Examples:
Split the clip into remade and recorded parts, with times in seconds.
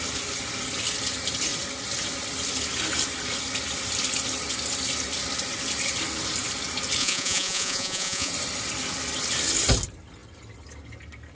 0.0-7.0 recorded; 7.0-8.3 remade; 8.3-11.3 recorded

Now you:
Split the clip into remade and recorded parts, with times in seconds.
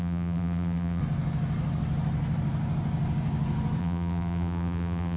0.0-1.0 remade; 1.0-3.8 recorded; 3.8-5.2 remade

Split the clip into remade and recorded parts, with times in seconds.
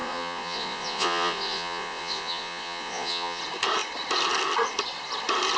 0.0-3.4 remade; 3.4-5.6 recorded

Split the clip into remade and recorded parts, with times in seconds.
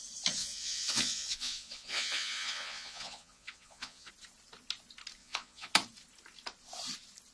0.0-0.4 recorded; 0.4-4.1 remade; 4.1-5.2 recorded; 5.2-5.7 remade; 5.7-7.3 recorded